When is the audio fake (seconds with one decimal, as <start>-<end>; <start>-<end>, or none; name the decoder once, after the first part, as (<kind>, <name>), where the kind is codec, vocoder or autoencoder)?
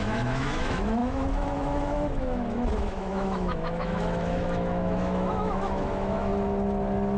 0.0-6.3 (autoencoder, DAC-VAE)